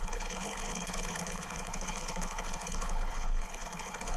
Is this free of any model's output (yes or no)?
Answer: no